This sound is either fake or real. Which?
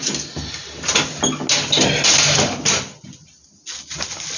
real